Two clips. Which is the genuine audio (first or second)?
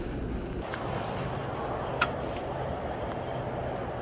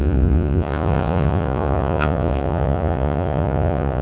first